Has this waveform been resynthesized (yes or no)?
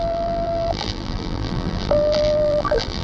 yes